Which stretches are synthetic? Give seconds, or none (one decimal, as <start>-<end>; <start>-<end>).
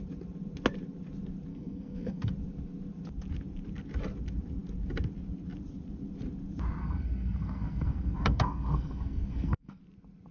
1.5-2.3; 6.8-9.8